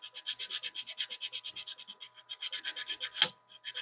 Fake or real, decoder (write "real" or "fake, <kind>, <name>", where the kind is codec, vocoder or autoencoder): real